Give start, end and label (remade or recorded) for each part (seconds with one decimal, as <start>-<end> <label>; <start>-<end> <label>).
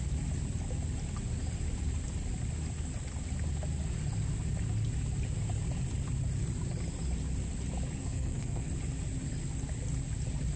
0.0-8.0 recorded; 8.0-8.7 remade; 8.7-10.6 recorded